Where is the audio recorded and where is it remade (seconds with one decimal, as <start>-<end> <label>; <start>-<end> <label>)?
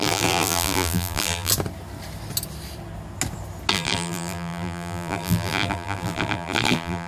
0.0-1.5 remade; 1.5-3.7 recorded; 3.7-7.1 remade